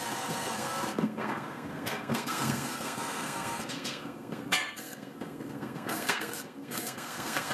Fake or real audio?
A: fake